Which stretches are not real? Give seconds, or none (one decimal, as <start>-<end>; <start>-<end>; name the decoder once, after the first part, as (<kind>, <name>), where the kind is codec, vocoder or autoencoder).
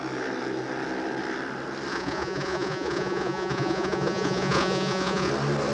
1.9-5.3 (vocoder, Vocos)